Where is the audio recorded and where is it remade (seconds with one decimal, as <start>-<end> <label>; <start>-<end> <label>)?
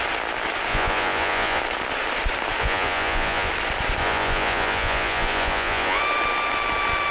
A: 0.0-0.7 recorded; 0.7-1.6 remade; 1.6-2.6 recorded; 2.6-3.5 remade; 3.5-4.0 recorded; 4.0-6.0 remade; 6.0-7.1 recorded